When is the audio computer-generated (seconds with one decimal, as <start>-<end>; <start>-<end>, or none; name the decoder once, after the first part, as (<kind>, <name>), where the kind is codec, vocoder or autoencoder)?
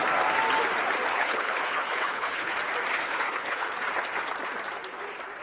1.1-2.5 (codec, HILCodec); 2.9-3.7